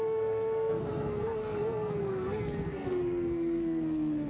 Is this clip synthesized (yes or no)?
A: yes